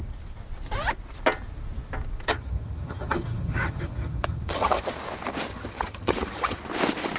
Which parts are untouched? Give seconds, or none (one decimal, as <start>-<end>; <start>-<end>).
0.0-2.3; 4.8-5.5; 6.6-7.2